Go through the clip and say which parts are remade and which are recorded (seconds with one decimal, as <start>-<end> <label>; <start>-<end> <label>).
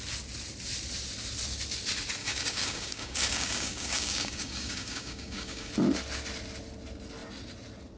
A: 0.0-2.2 recorded; 2.2-5.7 remade; 5.7-8.0 recorded